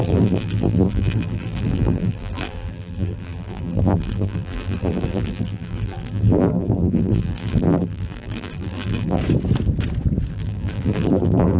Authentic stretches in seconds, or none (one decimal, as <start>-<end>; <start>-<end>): 9.2-10.3